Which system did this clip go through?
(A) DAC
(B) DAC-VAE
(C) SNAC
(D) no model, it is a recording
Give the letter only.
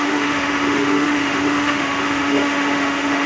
B